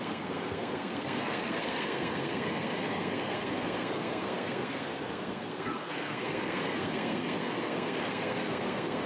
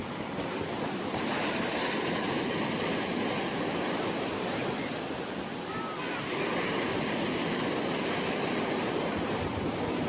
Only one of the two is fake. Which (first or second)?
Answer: first